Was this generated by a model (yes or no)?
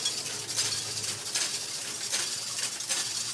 yes